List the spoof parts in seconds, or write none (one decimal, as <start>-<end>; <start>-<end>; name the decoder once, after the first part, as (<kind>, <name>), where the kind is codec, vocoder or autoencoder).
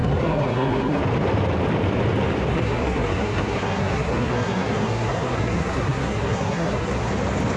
0.0-1.0 (codec, SNAC); 2.5-7.1